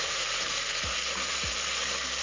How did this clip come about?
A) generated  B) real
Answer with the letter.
B